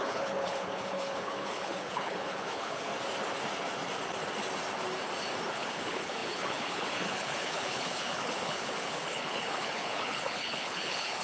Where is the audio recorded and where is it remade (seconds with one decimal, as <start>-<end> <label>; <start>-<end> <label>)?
0.0-2.9 remade; 2.9-5.5 recorded; 5.5-11.2 remade